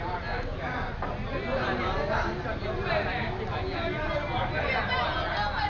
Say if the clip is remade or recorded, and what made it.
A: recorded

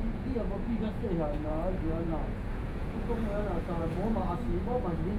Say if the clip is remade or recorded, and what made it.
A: remade, vocoder, Vocos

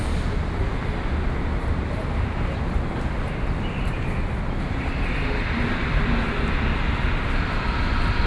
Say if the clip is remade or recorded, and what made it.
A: recorded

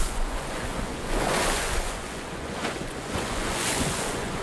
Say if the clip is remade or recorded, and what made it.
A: remade, vocoder, Vocos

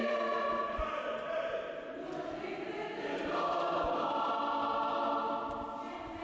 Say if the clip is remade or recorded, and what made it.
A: recorded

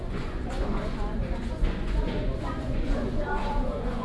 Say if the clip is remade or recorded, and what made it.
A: remade, vocoder, Vocos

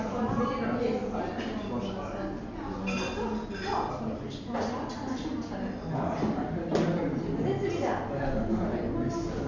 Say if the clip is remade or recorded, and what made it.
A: recorded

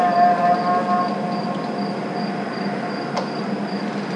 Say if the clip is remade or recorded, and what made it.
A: recorded